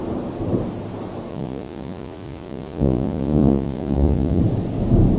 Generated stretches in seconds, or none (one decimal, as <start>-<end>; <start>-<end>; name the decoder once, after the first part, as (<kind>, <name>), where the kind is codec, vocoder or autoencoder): 1.3-4.4 (vocoder, Vocos)